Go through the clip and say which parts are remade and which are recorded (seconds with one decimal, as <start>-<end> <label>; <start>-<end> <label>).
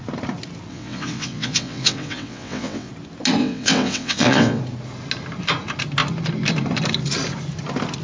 0.0-0.7 recorded; 0.7-2.9 remade; 2.9-3.4 recorded; 3.4-4.6 remade; 4.6-8.0 recorded